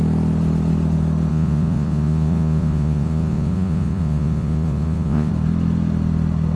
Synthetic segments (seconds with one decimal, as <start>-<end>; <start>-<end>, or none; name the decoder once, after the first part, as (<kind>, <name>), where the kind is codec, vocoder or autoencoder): 1.3-5.3 (vocoder, Vocos)